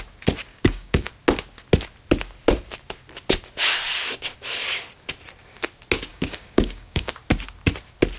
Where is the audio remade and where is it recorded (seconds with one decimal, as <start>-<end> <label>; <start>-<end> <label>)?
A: 0.0-0.5 recorded; 0.5-1.1 remade; 1.1-6.1 recorded; 6.1-7.1 remade; 7.1-8.2 recorded